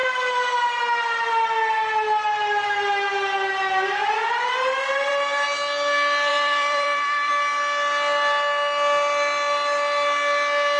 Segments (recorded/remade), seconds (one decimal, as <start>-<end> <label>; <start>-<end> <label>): 0.0-6.3 recorded; 6.3-7.3 remade; 7.3-10.8 recorded